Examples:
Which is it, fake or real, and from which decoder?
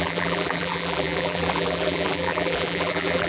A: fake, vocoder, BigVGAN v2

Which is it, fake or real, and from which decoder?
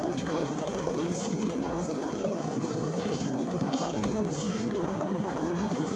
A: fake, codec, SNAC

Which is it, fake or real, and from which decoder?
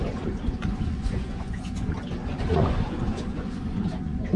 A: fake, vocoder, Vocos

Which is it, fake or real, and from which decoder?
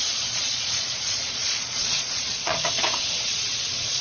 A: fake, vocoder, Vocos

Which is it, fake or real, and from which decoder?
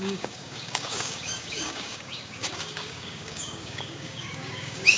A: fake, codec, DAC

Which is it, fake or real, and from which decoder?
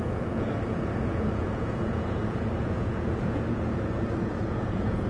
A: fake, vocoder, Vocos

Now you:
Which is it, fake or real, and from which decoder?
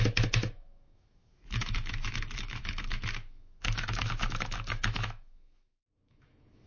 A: fake, autoencoder, DAC-VAE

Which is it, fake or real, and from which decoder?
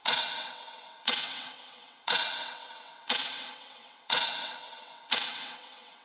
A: fake, vocoder, WaveNeXt